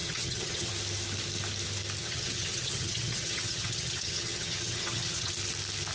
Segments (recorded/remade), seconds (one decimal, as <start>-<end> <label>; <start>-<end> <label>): 0.0-0.7 remade; 0.7-2.0 recorded; 2.0-5.3 remade; 5.3-5.9 recorded